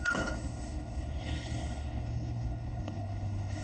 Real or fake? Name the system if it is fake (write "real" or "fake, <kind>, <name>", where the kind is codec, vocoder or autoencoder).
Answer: fake, codec, HILCodec